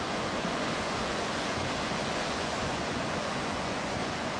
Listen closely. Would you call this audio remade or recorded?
remade